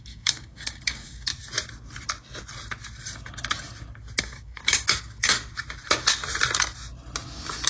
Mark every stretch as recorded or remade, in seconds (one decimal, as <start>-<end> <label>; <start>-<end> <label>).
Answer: 0.0-1.3 remade; 1.3-4.2 recorded; 4.2-5.4 remade; 5.4-7.7 recorded